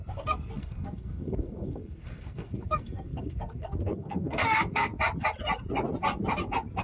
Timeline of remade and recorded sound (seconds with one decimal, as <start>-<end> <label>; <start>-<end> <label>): 0.0-4.9 remade; 4.9-6.8 recorded